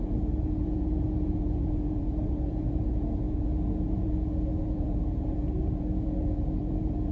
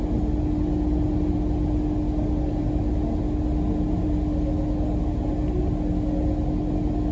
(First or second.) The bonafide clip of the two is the second